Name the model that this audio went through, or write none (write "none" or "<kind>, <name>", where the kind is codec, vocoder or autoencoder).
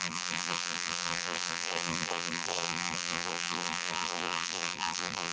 vocoder, BigVGAN v2